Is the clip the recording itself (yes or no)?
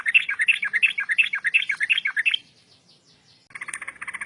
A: yes